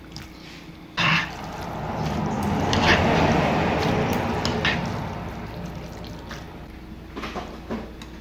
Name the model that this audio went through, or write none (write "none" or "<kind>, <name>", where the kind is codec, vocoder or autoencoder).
none